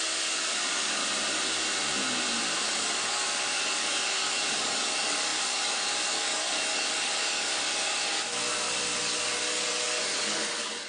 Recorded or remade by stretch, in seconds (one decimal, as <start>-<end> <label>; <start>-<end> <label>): 0.0-1.0 remade; 1.0-2.6 recorded; 2.6-8.3 remade; 8.3-9.0 recorded; 9.0-10.9 remade